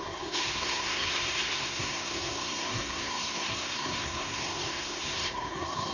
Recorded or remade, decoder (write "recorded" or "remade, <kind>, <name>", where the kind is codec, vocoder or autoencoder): remade, codec, SNAC